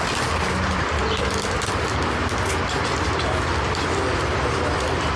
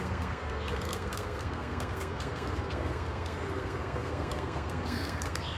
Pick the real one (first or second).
first